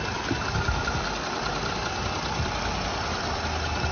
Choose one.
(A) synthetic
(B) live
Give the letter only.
B